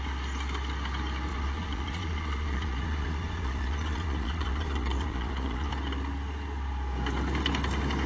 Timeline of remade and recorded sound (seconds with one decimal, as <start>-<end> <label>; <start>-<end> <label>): 0.0-1.3 recorded; 1.3-5.7 remade; 5.7-8.1 recorded